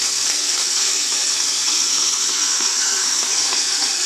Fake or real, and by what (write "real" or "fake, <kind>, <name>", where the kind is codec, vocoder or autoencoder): fake, codec, SNAC